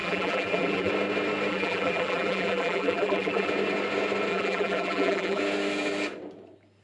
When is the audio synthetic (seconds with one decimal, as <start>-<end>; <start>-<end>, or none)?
0.0-0.9; 1.5-3.5; 4.3-5.4

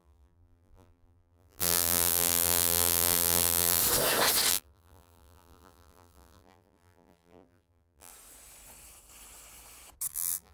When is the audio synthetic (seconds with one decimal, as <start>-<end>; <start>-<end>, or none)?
0.0-3.8; 4.5-8.1; 10.1-10.5

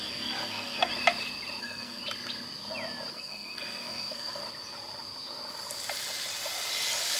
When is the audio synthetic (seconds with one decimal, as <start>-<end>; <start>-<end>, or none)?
0.0-0.9; 1.6-2.0; 3.1-4.4

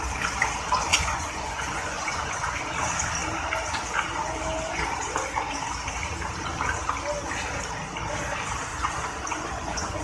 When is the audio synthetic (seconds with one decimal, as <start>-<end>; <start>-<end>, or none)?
0.9-2.6; 8.7-10.0

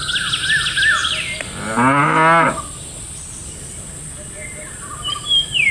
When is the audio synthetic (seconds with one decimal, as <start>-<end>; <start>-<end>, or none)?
none

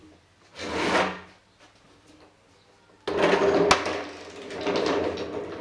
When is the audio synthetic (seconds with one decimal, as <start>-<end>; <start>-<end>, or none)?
none

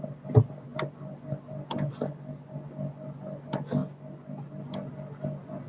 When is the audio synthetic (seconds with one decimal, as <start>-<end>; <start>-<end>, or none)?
none